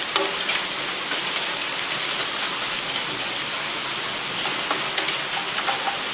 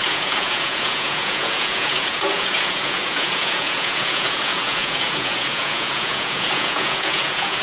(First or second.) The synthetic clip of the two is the second